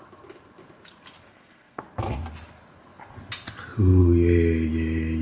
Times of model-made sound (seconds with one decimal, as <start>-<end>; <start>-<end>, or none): 1.3-1.8